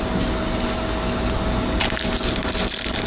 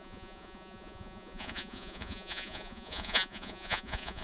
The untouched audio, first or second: first